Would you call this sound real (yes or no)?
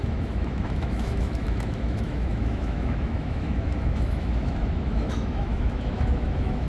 no